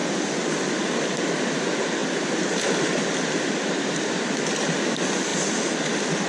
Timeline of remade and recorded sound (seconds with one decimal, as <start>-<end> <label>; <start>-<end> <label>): 0.0-6.3 recorded